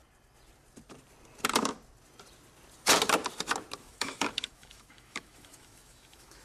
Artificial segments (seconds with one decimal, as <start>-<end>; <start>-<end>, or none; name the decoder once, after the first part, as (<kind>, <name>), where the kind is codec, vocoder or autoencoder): 3.8-6.4 (autoencoder, DAC-VAE)